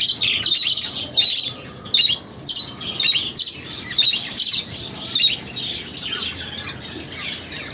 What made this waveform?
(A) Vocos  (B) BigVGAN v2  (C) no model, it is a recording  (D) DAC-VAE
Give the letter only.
C